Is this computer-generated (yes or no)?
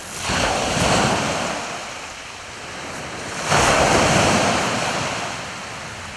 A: no